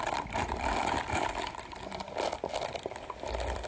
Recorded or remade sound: recorded